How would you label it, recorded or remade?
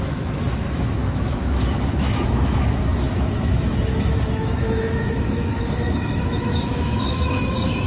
remade